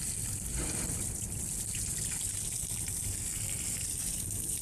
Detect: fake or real fake